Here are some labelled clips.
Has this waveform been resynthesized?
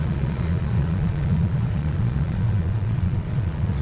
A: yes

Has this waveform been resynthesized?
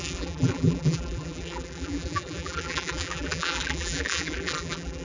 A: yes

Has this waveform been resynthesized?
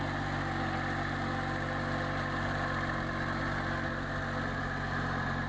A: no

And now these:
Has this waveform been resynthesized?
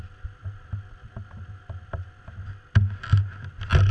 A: no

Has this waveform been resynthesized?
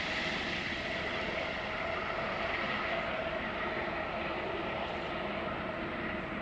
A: no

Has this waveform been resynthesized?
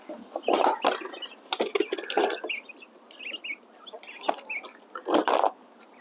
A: no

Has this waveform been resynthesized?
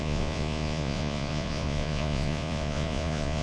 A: yes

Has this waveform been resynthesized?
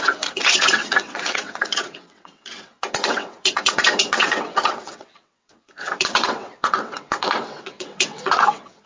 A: yes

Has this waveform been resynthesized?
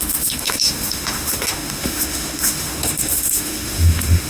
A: yes